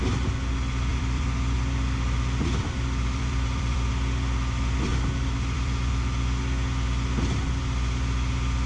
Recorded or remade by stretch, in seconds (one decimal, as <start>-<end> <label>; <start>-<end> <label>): 0.0-0.9 recorded; 0.9-3.9 remade; 3.9-4.9 recorded; 4.9-5.9 remade; 5.9-8.7 recorded